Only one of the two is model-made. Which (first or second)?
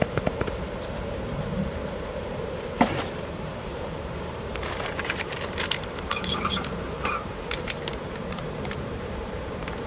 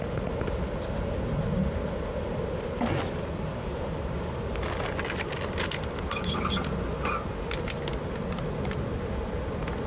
first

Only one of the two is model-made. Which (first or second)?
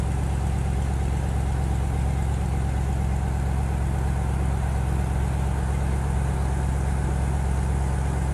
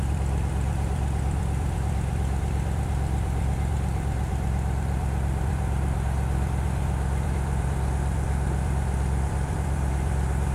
second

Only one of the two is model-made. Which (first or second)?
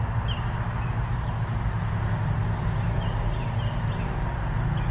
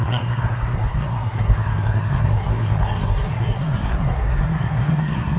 second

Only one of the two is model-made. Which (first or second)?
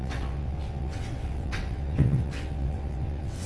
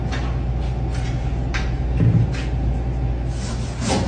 first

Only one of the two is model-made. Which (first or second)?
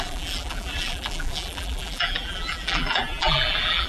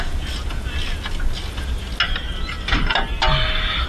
first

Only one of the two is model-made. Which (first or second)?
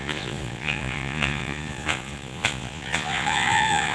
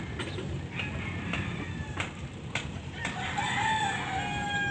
first